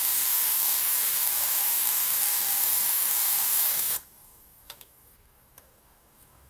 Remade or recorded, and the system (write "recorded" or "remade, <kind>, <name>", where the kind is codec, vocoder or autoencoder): remade, codec, DAC